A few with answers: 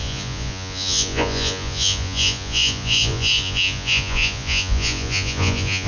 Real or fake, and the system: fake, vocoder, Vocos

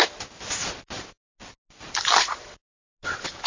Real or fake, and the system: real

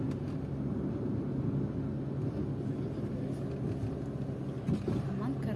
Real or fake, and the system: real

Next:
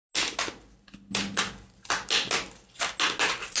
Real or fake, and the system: real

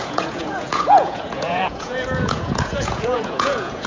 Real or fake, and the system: fake, vocoder, Vocos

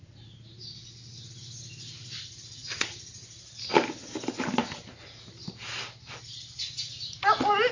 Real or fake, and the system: real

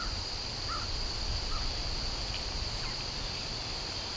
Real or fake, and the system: real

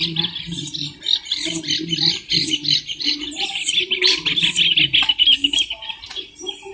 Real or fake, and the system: real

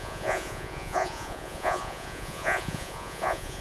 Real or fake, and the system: fake, vocoder, Vocos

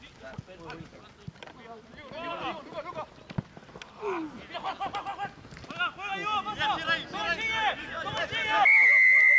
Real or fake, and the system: real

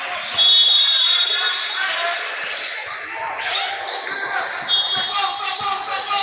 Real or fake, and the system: real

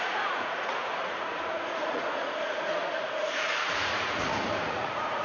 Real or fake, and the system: fake, vocoder, Vocos